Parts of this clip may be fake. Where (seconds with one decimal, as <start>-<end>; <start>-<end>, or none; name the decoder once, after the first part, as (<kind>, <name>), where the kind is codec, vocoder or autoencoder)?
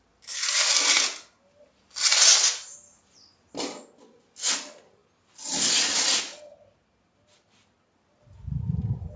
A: none